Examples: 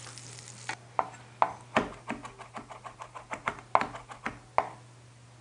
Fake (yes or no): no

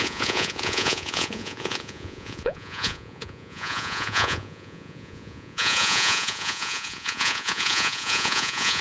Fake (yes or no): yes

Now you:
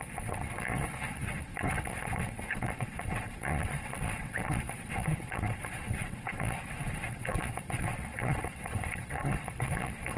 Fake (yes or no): yes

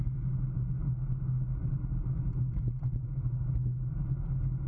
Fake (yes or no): no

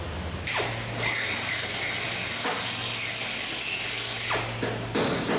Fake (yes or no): no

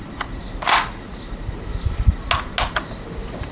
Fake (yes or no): no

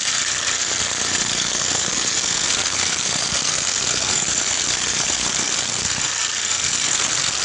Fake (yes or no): yes